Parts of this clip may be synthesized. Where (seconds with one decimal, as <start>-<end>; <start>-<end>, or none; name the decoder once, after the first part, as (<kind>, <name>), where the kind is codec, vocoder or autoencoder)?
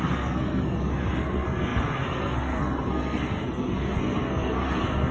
0.0-5.1 (codec, SNAC)